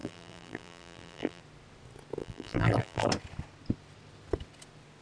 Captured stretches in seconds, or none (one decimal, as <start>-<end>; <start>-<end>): 1.4-2.2; 3.1-5.0